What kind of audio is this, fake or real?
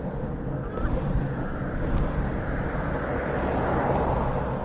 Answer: real